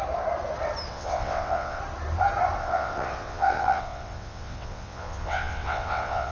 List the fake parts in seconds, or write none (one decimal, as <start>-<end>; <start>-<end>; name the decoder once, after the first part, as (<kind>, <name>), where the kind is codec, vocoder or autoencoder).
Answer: 0.9-1.8 (vocoder, WaveNeXt); 2.6-6.3